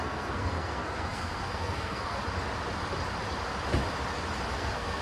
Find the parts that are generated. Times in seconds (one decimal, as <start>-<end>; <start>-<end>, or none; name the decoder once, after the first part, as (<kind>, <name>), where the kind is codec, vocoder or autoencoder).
0.0-2.2 (codec, SNAC); 4.5-5.0